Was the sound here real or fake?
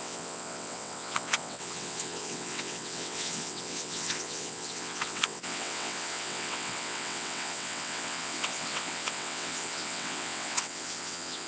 fake